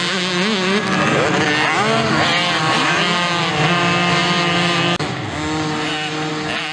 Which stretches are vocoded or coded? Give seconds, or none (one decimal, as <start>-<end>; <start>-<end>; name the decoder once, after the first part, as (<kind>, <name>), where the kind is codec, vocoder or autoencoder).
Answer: none